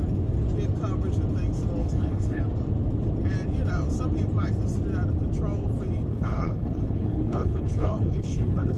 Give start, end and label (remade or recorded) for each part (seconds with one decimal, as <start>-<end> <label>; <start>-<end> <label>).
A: 0.0-1.8 recorded; 1.8-2.4 remade; 2.4-6.1 recorded; 6.1-8.8 remade